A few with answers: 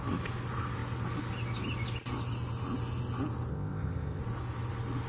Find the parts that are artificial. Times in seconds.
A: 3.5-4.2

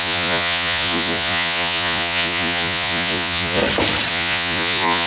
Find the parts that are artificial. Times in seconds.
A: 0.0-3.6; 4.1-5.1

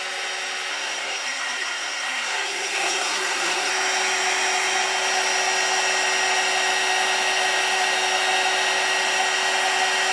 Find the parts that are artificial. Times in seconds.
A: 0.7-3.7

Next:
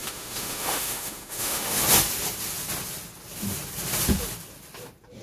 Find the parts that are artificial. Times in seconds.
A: 0.0-1.8